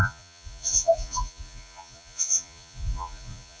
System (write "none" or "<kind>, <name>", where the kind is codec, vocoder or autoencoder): vocoder, Vocos